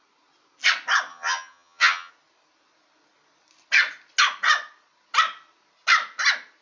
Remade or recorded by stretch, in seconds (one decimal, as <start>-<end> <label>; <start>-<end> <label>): 0.0-1.1 recorded; 1.1-2.1 remade; 2.1-6.6 recorded